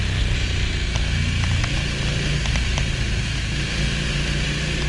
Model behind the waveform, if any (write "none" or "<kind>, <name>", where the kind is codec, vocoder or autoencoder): none